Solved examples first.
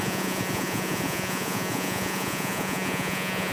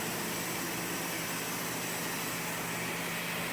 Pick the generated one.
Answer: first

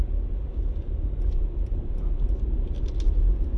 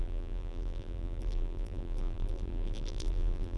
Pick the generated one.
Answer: second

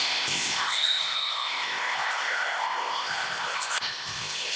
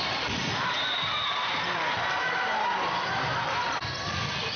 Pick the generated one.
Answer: first